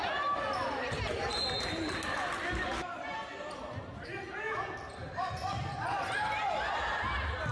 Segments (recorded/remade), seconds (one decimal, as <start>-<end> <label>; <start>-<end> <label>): 0.0-7.5 recorded